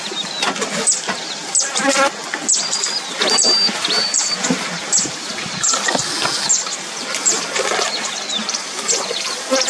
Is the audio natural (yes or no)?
yes